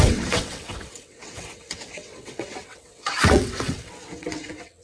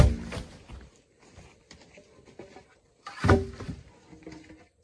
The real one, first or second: second